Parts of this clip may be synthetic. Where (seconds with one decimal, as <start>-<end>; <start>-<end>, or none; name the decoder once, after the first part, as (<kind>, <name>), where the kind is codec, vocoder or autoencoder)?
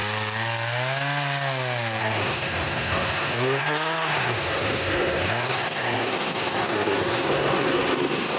2.0-8.4 (codec, SNAC)